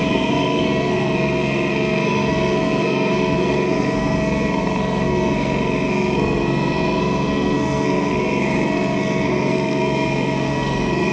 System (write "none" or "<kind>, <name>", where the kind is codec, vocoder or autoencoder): codec, SNAC